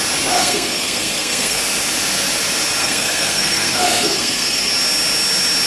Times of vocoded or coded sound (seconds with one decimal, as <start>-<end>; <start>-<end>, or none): 0.4-1.6; 2.8-4.7

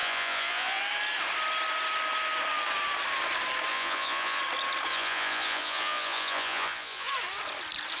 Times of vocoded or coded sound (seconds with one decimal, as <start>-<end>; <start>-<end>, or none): 0.0-0.8; 3.7-4.4; 4.9-7.1

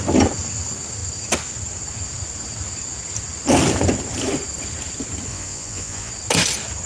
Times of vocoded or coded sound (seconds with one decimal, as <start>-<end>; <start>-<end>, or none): 5.3-6.1

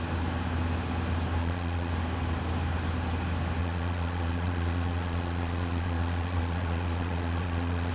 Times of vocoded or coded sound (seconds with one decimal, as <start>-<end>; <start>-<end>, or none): 1.4-1.9; 3.6-7.9